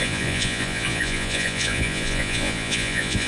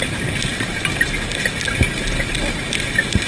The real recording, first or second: second